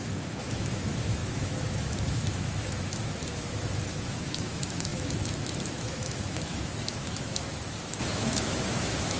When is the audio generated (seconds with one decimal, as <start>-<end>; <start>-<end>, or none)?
0.0-9.2